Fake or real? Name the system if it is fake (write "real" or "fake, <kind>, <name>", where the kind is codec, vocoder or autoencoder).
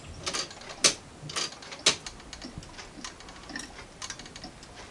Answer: real